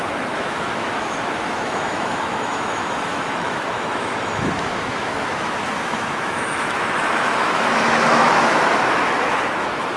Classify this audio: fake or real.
fake